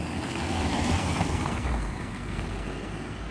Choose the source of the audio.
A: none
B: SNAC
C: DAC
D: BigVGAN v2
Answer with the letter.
B